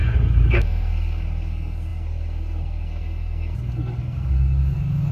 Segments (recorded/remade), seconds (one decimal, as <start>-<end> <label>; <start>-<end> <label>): 0.0-0.5 recorded; 0.5-5.1 remade